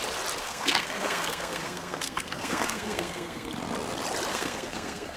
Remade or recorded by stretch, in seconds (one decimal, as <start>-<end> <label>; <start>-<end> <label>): 0.0-0.4 recorded; 0.4-3.5 remade; 3.5-4.3 recorded; 4.3-5.2 remade